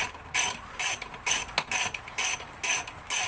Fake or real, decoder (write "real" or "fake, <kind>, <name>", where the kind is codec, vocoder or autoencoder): real